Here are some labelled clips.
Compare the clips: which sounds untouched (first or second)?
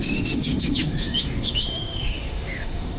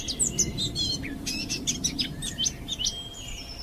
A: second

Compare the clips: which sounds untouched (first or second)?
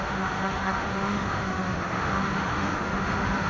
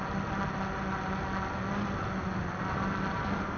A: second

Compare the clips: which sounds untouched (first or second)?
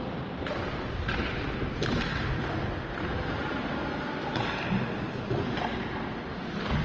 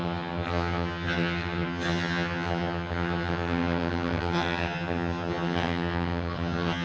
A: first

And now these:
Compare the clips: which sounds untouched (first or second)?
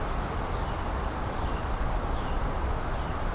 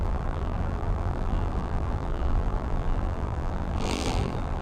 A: first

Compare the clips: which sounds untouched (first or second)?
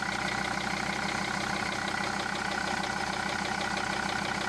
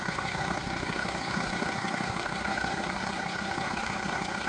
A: first